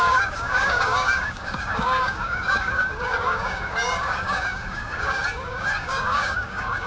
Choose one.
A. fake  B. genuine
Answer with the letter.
A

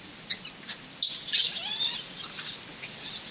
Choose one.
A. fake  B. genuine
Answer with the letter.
B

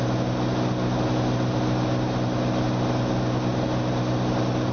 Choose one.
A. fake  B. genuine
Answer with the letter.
B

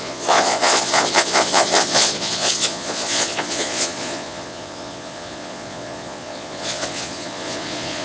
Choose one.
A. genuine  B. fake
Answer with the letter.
B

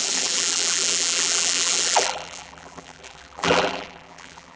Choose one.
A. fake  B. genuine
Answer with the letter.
A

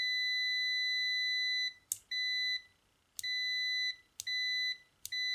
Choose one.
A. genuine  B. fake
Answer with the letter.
A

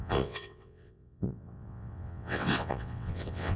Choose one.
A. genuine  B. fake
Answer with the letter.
B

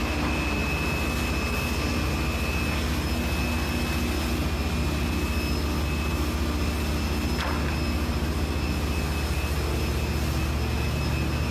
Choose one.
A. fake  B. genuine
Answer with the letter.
B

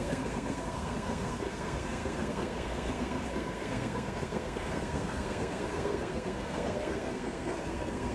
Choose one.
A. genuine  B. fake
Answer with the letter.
B